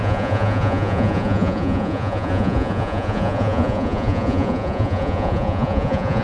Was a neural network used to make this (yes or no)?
yes